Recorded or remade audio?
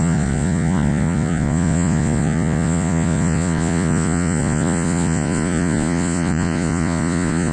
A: remade